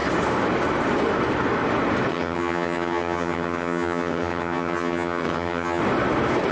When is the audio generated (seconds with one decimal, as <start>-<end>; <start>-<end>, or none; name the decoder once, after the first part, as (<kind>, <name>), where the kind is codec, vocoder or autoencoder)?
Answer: 2.1-5.8 (vocoder, HiFi-GAN)